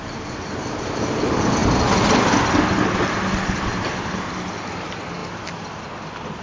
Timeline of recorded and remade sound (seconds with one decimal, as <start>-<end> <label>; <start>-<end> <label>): 0.0-1.6 remade; 1.6-3.6 recorded; 3.6-5.2 remade; 5.2-6.4 recorded